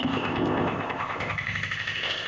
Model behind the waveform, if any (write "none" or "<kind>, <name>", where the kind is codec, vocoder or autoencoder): codec, ZipCodec